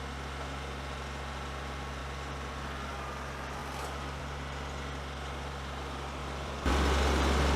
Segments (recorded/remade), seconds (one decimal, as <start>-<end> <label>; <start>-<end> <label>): 0.0-6.2 recorded; 6.2-6.7 remade; 6.7-7.6 recorded